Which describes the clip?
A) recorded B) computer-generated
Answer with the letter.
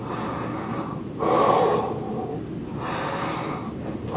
A